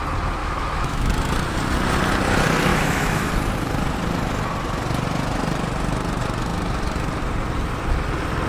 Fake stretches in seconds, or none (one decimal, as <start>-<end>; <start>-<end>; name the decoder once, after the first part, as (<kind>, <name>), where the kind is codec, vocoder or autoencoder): 0.4-1.1 (autoencoder, DAC-VAE); 2.7-3.3